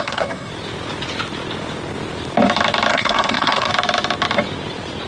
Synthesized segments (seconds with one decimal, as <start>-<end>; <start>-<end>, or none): 0.0-0.5; 2.9-3.7